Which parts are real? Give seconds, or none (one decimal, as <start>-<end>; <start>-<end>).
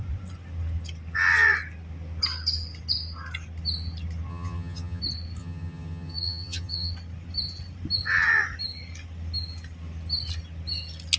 0.0-4.3; 5.0-5.4; 6.9-11.2